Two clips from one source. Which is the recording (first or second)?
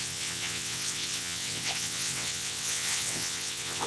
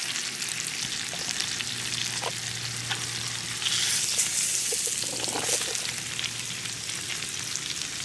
second